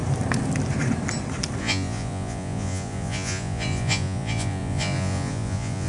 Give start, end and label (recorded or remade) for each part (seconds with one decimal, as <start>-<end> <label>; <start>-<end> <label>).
0.0-1.6 recorded; 1.6-5.9 remade

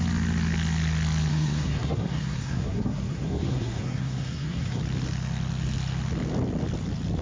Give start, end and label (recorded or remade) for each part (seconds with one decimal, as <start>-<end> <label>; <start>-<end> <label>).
0.0-1.3 recorded; 1.3-4.8 remade; 4.8-7.2 recorded

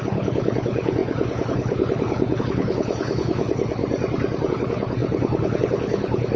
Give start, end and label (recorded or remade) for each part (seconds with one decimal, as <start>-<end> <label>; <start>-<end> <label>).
0.0-3.8 remade; 3.8-4.5 recorded; 4.5-6.4 remade

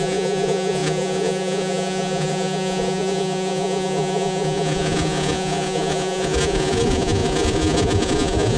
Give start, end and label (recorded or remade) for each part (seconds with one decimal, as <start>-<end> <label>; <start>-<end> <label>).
0.0-8.6 remade

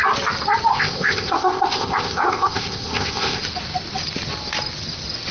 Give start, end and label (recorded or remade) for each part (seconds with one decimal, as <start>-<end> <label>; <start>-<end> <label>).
0.0-0.7 recorded; 0.7-3.4 remade; 3.4-5.3 recorded